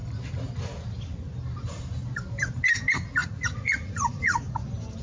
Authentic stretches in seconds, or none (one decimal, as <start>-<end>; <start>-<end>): 0.0-3.2; 4.5-5.0

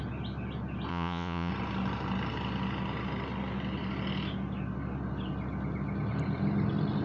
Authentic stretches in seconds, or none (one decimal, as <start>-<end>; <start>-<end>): 0.0-0.9; 1.5-7.0

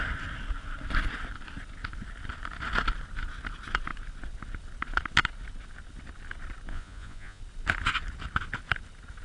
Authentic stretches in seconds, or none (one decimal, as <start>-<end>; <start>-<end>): 0.0-6.7; 7.4-9.2

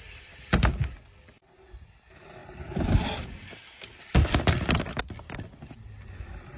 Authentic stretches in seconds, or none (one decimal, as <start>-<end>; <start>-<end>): 0.0-6.6

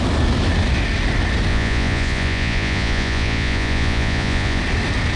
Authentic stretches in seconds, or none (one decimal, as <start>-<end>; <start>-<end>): 0.0-1.5; 4.6-5.2

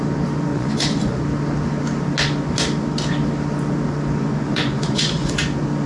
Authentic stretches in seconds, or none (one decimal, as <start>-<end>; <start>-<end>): 0.0-0.5; 1.2-4.2; 5.3-5.9